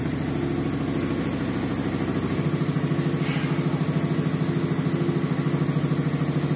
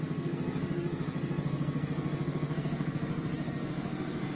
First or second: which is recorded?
first